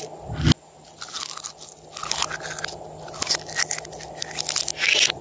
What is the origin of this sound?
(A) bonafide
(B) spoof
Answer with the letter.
A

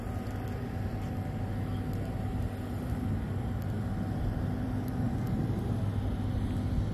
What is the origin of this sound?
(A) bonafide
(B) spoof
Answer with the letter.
A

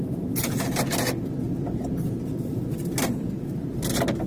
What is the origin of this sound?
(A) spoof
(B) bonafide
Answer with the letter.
B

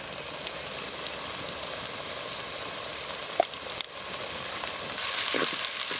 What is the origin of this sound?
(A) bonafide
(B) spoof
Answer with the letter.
A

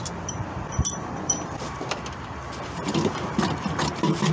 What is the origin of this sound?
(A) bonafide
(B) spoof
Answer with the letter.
B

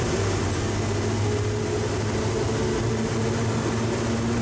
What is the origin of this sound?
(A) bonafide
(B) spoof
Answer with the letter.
A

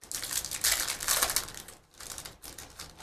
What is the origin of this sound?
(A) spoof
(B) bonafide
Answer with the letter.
B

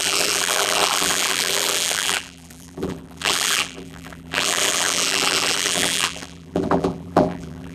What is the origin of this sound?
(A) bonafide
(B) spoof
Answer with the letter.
B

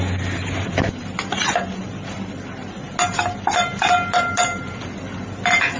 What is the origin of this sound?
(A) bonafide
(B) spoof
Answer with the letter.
A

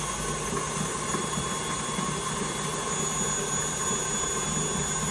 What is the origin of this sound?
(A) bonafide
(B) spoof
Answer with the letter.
A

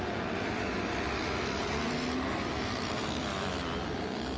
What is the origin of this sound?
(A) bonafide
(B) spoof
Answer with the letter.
B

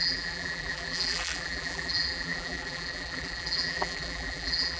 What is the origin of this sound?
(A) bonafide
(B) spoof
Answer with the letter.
B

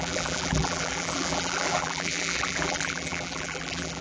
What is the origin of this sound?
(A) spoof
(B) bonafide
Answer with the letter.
A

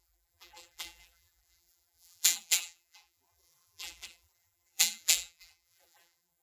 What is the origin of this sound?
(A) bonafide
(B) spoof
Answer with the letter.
B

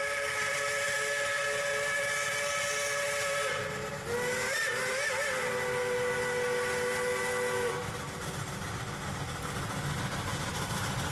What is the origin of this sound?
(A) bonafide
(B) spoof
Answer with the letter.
A